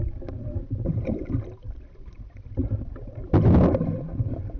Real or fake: real